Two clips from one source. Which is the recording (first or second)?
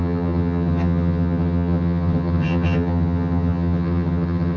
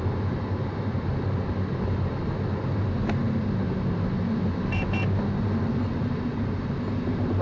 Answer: second